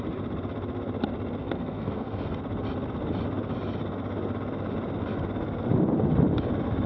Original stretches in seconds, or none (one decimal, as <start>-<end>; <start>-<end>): 0.0-1.4; 2.4-6.9